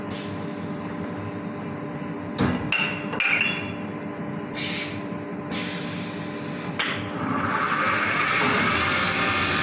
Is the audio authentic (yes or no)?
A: yes